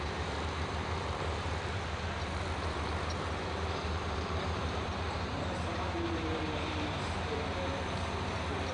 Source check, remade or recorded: remade